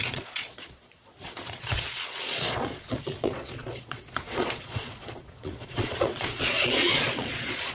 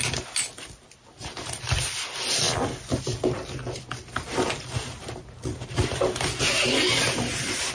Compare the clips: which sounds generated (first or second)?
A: first